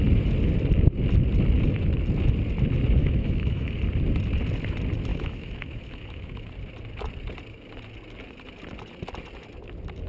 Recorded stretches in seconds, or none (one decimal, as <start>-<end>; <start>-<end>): 0.0-3.0; 3.8-5.1; 6.5-10.1